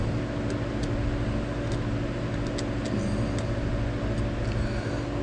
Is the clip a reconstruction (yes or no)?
no